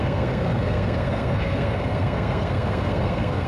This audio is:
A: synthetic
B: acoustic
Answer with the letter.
A